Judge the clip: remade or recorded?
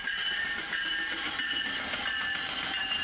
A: recorded